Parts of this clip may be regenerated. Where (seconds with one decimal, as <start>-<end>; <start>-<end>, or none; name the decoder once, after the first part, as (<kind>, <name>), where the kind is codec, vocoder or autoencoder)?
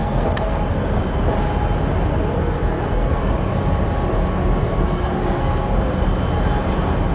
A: 0.0-1.0 (codec, SNAC); 2.1-3.3; 4.6-5.8